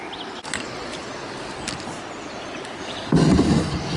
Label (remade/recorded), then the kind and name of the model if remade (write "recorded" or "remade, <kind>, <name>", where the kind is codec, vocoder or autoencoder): recorded